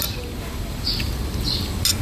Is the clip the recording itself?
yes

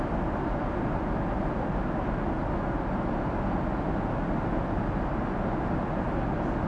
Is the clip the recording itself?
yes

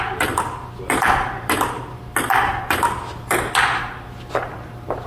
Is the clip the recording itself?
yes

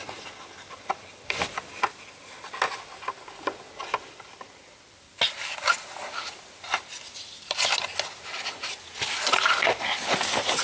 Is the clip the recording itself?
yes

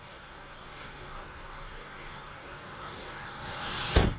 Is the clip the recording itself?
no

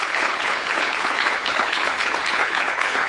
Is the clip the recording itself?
no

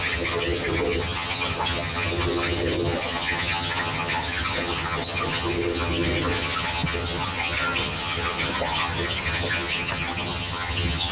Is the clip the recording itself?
no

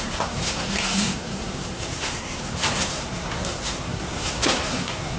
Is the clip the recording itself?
no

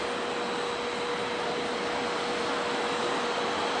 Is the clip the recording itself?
yes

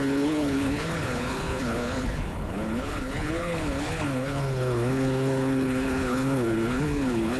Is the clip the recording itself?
no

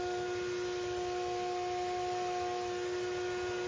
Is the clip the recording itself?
yes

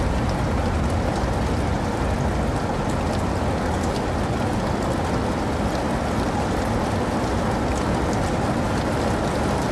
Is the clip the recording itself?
yes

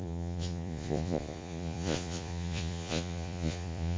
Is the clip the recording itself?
no